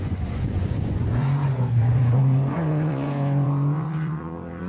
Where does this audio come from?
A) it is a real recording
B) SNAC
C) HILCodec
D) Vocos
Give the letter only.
D